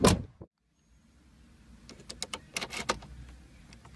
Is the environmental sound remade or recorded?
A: recorded